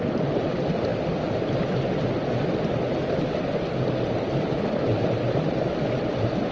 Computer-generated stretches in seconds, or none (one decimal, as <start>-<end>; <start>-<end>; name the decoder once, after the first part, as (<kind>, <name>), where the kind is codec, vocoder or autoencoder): none

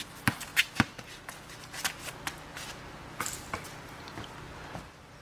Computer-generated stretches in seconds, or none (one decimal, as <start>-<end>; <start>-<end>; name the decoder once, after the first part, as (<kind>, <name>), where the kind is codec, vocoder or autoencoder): none

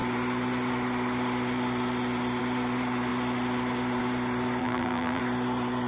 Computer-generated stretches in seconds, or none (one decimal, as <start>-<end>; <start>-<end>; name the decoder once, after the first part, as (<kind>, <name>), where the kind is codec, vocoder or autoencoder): 4.6-5.2 (vocoder, BigVGAN v2)

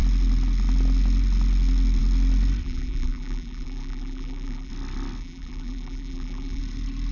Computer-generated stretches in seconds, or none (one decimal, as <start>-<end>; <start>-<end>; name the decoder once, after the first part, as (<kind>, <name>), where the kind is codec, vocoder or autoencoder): 2.6-4.7 (vocoder, BigVGAN v2); 5.2-6.6

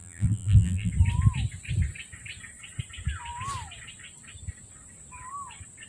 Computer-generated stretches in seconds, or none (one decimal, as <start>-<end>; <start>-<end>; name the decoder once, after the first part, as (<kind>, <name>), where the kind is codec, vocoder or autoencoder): 0.0-0.9 (vocoder, BigVGAN v2)

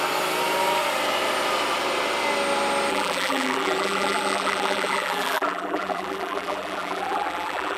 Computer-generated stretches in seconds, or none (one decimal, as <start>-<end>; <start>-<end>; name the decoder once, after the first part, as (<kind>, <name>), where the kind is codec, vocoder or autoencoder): 2.9-7.8 (vocoder, BigVGAN v2)

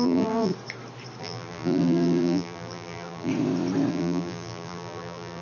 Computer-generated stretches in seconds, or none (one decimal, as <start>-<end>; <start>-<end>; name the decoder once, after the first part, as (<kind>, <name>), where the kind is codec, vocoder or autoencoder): 0.0-0.5 (vocoder, BigVGAN v2); 1.2-3.3; 3.9-5.4